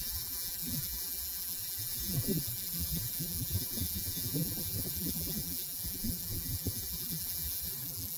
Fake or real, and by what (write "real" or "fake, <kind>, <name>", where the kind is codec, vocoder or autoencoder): fake, vocoder, BigVGAN v2